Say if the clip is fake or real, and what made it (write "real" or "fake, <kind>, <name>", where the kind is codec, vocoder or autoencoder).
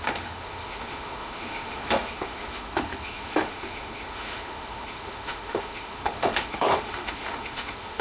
fake, autoencoder, DAC-VAE